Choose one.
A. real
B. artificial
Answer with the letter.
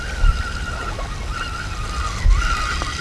A